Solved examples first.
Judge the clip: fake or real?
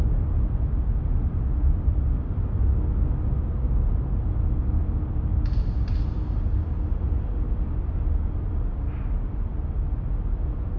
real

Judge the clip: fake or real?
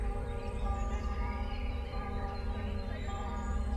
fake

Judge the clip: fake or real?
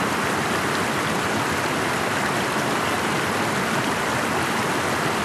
real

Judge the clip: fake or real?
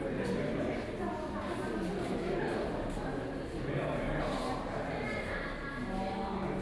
real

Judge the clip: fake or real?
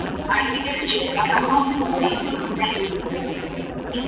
fake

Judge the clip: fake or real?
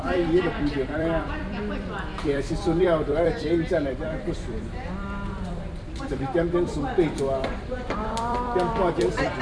fake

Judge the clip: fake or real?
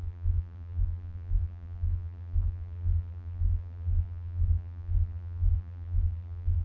fake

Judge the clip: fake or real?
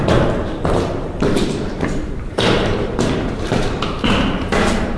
fake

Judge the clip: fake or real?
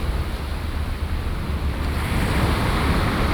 real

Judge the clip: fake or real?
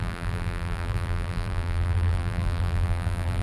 fake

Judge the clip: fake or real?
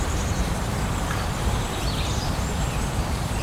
fake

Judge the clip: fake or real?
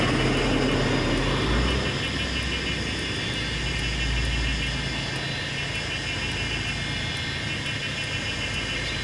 real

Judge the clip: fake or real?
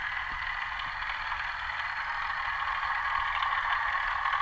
real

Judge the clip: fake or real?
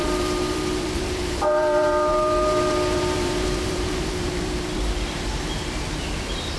fake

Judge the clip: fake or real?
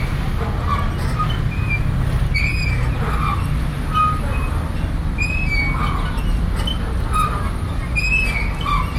real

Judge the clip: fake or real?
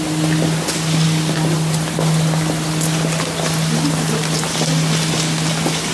real